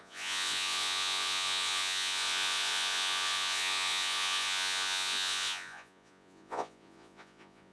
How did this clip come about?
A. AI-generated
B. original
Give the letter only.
A